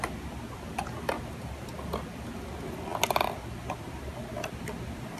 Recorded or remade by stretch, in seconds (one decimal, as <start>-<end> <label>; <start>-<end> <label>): 0.0-5.2 recorded